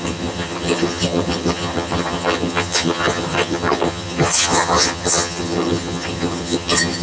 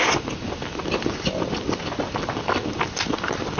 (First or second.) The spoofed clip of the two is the first